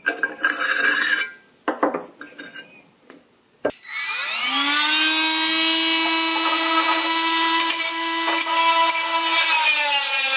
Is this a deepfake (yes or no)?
no